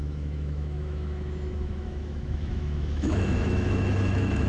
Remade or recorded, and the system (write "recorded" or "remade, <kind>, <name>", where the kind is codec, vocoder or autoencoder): remade, autoencoder, DAC-VAE